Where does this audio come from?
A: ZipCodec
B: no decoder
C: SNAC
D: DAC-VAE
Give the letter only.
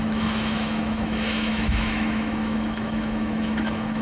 D